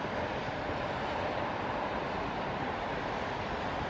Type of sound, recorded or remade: remade